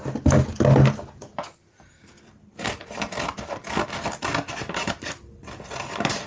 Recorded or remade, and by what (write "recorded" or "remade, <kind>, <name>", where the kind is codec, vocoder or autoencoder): recorded